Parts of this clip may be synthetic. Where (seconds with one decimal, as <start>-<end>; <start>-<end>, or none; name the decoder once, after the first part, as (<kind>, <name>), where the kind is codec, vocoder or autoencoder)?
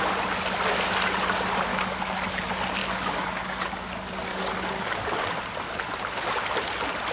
1.7-2.4 (codec, DAC); 2.8-3.9; 4.3-5.4